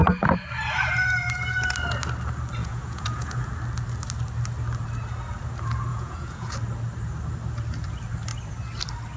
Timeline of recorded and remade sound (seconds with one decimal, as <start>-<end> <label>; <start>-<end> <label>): 0.0-2.6 recorded; 2.6-3.5 remade; 3.5-5.9 recorded; 5.9-6.5 remade; 6.5-9.2 recorded